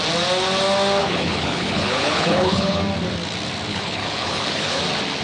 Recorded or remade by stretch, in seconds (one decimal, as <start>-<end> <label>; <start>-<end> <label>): 0.0-1.0 recorded; 1.0-2.8 remade; 2.8-3.7 recorded; 3.7-4.8 remade; 4.8-5.2 recorded